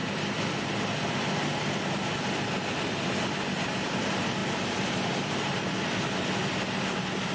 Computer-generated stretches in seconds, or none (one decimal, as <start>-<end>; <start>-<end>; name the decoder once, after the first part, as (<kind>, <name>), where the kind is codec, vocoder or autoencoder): none